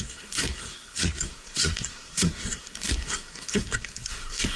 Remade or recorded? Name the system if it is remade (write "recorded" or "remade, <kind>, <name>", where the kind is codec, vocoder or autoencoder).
remade, codec, SNAC